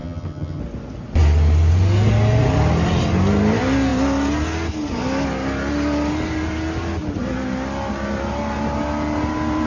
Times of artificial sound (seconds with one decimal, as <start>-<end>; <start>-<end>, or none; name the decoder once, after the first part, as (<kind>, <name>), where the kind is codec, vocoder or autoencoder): 0.0-0.6 (vocoder, HiFi-GAN)